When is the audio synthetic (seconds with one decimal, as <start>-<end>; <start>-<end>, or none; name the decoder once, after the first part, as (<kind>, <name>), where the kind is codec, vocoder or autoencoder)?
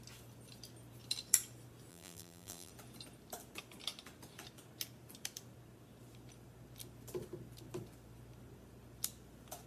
1.9-2.7 (vocoder, BigVGAN v2)